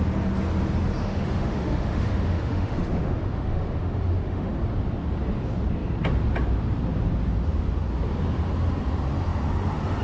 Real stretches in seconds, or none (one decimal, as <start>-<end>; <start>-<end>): 0.0-1.0; 4.5-10.0